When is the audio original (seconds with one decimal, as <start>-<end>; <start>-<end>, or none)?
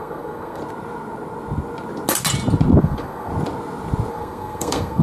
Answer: 0.6-2.8; 3.3-4.1